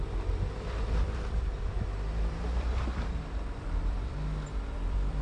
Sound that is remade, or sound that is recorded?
remade